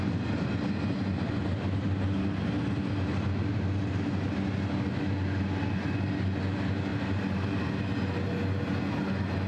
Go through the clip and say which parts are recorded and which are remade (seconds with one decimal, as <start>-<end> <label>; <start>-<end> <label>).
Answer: 0.0-9.5 recorded